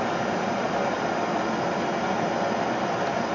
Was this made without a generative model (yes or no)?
yes